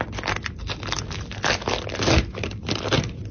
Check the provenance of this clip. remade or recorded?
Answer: recorded